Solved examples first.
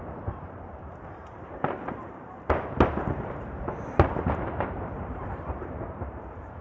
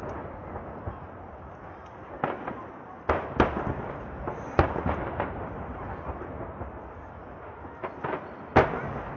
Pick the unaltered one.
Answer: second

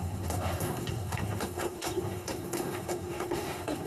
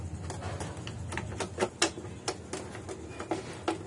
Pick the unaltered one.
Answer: second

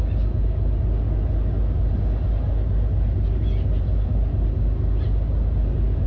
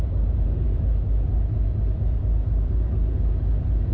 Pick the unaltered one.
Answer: first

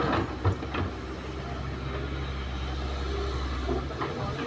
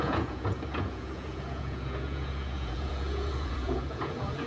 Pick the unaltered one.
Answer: first